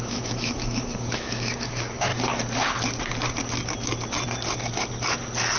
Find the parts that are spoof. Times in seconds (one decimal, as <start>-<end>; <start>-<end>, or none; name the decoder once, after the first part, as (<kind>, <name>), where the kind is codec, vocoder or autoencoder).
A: 0.0-2.1 (autoencoder, DAC-VAE)